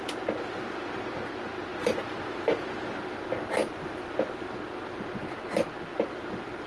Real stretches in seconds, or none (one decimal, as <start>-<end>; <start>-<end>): 0.0-6.7

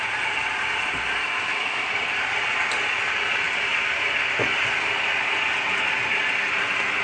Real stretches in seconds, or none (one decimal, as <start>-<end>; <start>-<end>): 0.0-1.2; 1.9-7.0

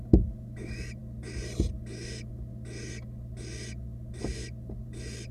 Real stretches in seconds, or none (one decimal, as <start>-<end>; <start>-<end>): 0.0-5.3

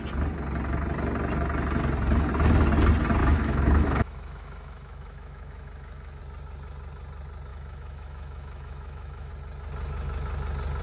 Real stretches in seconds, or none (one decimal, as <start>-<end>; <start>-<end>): 0.0-3.2; 6.2-7.5; 9.3-10.8

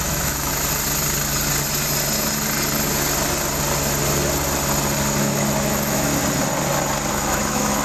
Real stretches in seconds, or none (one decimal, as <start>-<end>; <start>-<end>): 0.5-5.2; 6.1-7.1

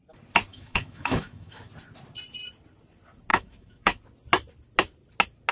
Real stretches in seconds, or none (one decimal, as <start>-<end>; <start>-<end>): 0.0-0.5; 1.7-3.3; 4.0-5.5

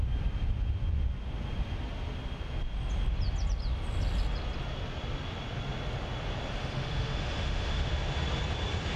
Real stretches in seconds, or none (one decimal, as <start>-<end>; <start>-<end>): 0.0-6.6; 7.9-9.0

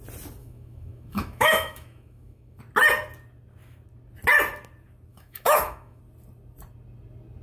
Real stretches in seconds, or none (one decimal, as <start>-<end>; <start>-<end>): 0.0-0.4; 2.6-5.1; 6.0-7.4